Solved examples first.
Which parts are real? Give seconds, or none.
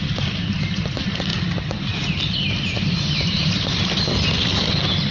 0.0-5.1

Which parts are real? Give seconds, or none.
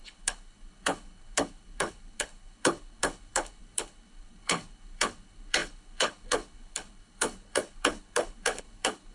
none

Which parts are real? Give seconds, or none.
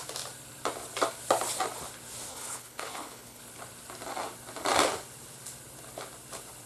0.0-2.3; 3.4-6.7